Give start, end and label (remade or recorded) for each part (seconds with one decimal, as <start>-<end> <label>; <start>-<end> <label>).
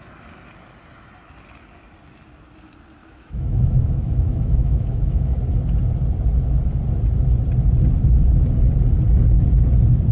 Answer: 0.0-3.0 recorded; 3.0-5.5 remade; 5.5-10.1 recorded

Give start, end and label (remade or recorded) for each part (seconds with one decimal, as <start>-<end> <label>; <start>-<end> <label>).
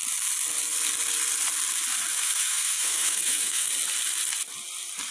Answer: 0.0-2.1 recorded; 2.1-3.7 remade; 3.7-5.1 recorded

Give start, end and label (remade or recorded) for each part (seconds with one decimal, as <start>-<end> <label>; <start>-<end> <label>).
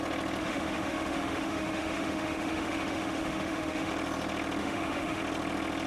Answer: 0.0-0.4 recorded; 0.4-3.9 remade; 3.9-4.6 recorded; 4.6-5.2 remade; 5.2-5.9 recorded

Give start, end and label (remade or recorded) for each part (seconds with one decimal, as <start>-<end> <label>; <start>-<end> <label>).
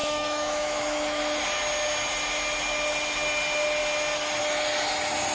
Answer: 0.0-1.2 remade; 1.2-5.3 recorded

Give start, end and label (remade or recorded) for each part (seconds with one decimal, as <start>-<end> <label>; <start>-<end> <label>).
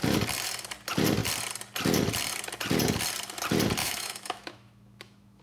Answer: 0.0-3.8 recorded; 3.8-5.4 remade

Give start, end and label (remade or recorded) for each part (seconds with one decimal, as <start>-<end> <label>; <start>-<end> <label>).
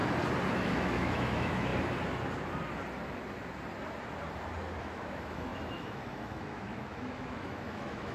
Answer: 0.0-0.5 recorded; 0.5-1.7 remade; 1.7-4.8 recorded; 4.8-8.1 remade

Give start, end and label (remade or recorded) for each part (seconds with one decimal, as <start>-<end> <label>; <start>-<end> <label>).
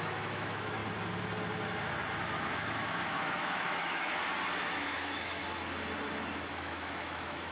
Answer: 0.0-0.8 remade; 0.8-2.5 recorded; 2.5-4.1 remade; 4.1-4.6 recorded; 4.6-5.4 remade; 5.4-6.5 recorded; 6.5-7.5 remade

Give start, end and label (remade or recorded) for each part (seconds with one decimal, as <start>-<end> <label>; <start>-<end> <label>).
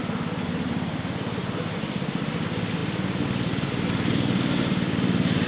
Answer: 0.0-5.5 recorded